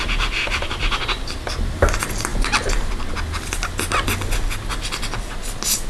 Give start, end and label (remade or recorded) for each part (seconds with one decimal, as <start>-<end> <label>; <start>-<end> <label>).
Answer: 0.0-5.9 recorded